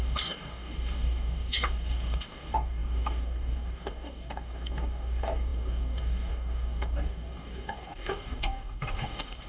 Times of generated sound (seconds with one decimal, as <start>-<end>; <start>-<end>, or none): 0.0-9.5